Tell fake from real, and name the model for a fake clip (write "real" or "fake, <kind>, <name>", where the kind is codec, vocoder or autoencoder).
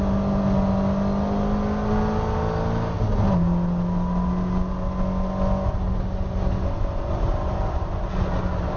real